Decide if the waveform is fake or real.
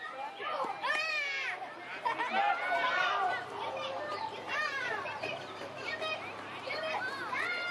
fake